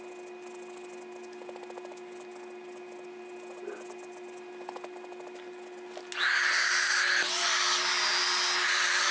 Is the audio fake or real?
real